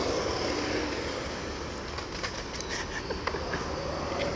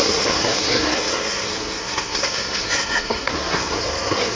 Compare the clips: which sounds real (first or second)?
first